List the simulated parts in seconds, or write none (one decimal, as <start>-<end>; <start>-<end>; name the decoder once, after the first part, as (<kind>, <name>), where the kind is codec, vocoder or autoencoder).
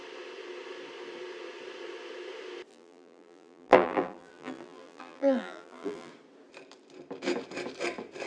2.7-6.1 (vocoder, BigVGAN v2)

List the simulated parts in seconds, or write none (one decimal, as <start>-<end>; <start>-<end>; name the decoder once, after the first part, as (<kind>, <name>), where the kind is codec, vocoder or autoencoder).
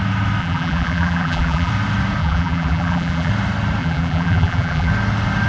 0.4-1.7 (vocoder, BigVGAN v2); 2.2-3.3; 3.8-4.9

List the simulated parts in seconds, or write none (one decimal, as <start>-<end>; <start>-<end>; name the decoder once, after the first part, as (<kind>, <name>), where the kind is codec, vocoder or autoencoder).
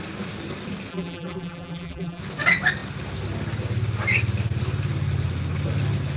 0.9-2.2 (vocoder, BigVGAN v2)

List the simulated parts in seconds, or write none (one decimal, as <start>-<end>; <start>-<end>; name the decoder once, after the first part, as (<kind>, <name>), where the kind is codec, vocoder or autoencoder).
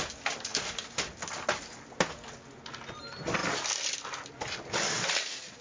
none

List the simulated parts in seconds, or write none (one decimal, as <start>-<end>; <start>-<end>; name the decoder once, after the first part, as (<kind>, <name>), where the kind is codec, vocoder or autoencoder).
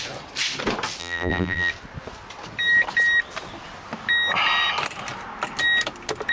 1.0-1.7 (vocoder, BigVGAN v2)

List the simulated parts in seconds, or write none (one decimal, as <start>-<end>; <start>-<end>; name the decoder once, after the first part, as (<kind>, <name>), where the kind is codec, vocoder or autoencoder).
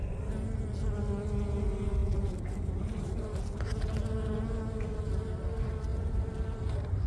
2.0-3.6 (vocoder, BigVGAN v2); 5.9-7.1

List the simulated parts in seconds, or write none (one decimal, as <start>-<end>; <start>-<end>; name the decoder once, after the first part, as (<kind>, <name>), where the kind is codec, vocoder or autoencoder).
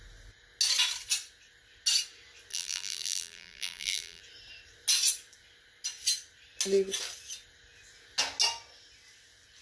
2.5-4.2 (vocoder, BigVGAN v2)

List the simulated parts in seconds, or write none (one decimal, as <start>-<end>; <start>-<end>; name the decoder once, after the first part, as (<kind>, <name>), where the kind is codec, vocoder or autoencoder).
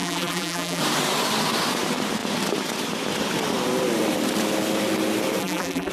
0.0-0.8 (vocoder, BigVGAN v2); 5.4-5.9